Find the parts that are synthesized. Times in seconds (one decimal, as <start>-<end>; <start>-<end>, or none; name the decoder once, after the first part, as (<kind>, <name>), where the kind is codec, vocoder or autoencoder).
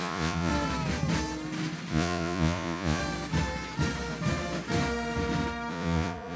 0.0-0.5 (vocoder, Vocos); 1.9-3.0; 5.7-6.4